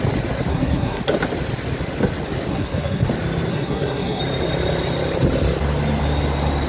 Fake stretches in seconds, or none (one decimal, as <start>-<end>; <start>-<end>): 0.5-1.0; 2.5-3.1; 3.5-4.2